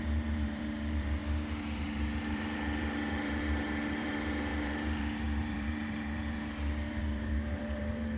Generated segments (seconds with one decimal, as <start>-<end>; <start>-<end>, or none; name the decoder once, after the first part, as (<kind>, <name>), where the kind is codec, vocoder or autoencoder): 0.0-8.2 (vocoder, BigVGAN v2)